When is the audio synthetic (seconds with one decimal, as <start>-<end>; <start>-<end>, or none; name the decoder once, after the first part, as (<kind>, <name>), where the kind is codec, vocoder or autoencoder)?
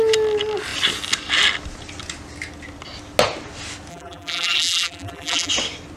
3.9-5.5 (vocoder, BigVGAN v2)